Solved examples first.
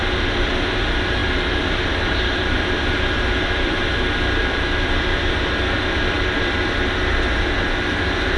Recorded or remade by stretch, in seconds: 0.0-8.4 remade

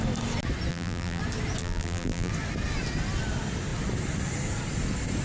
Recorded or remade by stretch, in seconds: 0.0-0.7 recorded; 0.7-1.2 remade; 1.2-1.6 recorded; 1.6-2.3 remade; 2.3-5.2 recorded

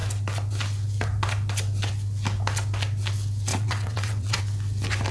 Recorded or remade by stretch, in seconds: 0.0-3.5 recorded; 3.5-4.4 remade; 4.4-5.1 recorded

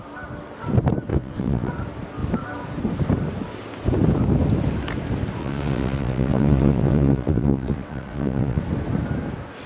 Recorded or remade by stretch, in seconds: 0.0-1.1 recorded; 1.1-1.7 remade; 1.7-5.4 recorded; 5.4-8.6 remade; 8.6-9.7 recorded

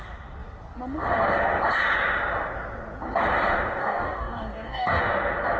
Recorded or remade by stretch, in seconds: 0.0-3.8 recorded; 3.8-5.0 remade; 5.0-5.6 recorded

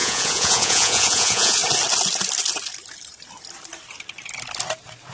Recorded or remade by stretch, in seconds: 0.0-1.6 remade; 1.6-5.1 recorded

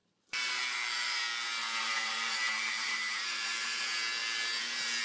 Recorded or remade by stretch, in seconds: 0.0-1.2 remade; 1.2-1.8 recorded; 1.8-3.8 remade; 3.8-5.0 recorded